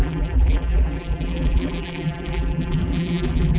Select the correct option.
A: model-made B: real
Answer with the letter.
A